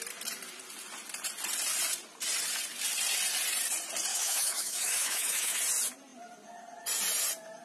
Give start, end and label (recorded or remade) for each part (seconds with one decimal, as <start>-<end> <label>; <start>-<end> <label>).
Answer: 0.0-4.1 recorded; 4.1-5.6 remade; 5.6-7.6 recorded